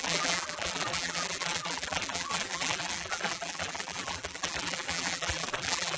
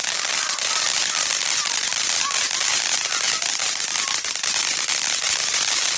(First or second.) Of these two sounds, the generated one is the first